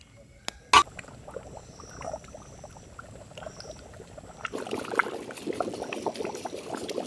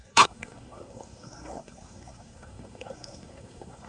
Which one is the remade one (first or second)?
second